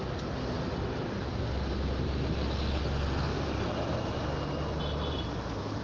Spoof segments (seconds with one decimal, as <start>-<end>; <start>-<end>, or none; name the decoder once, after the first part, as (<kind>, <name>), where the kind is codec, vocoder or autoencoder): none